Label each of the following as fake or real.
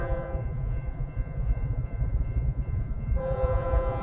fake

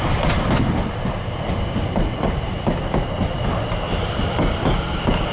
real